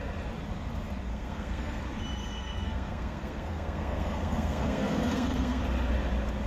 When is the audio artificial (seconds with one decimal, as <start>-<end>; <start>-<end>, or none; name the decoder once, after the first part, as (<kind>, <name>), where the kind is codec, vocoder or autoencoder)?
1.1-1.8 (codec, SNAC); 2.2-5.6

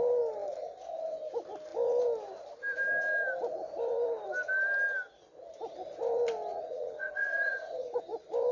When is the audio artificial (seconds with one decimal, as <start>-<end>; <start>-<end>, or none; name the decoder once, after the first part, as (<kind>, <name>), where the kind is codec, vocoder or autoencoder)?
6.5-8.0 (vocoder, Vocos)

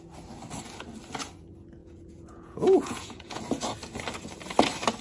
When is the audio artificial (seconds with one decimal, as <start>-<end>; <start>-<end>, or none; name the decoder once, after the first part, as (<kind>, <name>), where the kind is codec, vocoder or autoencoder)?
1.8-3.4 (vocoder, Vocos)

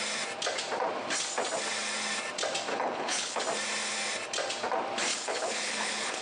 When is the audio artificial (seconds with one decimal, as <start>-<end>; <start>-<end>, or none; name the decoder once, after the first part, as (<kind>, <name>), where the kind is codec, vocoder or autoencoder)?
2.7-3.4 (codec, HILCodec); 5.1-6.2

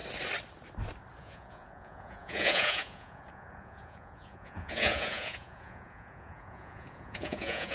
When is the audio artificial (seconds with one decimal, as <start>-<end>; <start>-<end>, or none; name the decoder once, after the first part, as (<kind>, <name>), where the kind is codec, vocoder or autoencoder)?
1.2-7.7 (vocoder, Vocos)

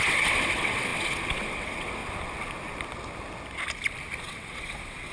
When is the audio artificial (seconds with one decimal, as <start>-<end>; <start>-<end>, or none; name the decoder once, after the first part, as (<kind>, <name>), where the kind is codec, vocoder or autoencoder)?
0.0-2.0 (vocoder, WaveNeXt); 4.2-5.1

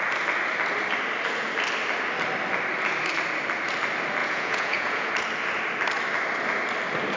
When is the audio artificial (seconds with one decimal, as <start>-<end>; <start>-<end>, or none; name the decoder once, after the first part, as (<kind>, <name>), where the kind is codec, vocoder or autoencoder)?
4.2-5.1 (vocoder, Vocos)